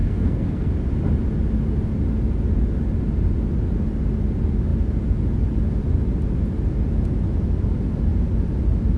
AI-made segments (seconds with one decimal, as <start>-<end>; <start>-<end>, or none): 0.0-0.7